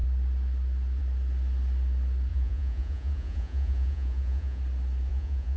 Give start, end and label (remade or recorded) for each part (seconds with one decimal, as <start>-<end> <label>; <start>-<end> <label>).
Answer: 0.0-2.3 recorded; 2.3-4.6 remade; 4.6-5.1 recorded; 5.1-5.6 remade